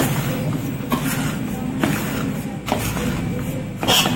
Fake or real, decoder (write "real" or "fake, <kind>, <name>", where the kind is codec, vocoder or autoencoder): real